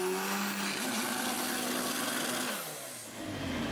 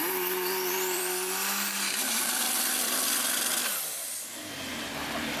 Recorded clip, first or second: first